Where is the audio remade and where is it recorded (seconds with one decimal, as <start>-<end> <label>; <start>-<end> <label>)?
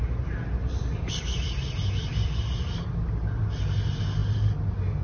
0.0-0.6 recorded; 0.6-3.4 remade; 3.4-5.0 recorded